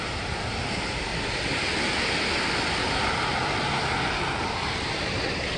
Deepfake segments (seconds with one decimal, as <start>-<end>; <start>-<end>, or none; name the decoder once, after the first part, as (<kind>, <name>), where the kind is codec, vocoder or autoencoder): 0.0-1.1 (vocoder, BigVGAN v2); 4.5-5.6